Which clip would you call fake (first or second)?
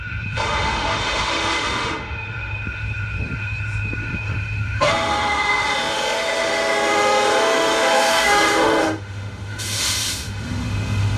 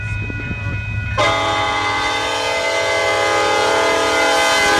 first